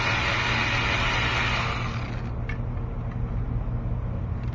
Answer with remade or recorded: recorded